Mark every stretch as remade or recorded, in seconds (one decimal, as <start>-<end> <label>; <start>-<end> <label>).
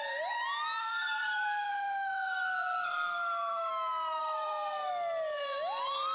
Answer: 0.0-0.8 recorded; 0.8-3.7 remade; 3.7-4.2 recorded; 4.2-4.9 remade; 4.9-6.1 recorded